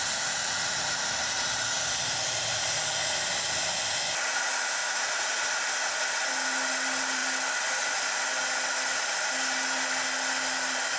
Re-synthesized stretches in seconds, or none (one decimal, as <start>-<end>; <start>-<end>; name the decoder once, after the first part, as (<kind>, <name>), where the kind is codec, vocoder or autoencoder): 4.8-5.6 (vocoder, BigVGAN v2)